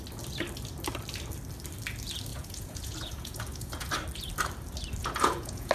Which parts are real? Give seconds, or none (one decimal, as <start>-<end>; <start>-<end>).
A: 0.0-2.3; 3.9-5.0